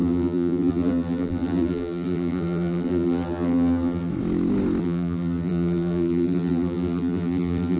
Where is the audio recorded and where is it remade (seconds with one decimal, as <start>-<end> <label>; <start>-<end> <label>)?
0.0-4.1 remade; 4.1-4.8 recorded; 4.8-7.8 remade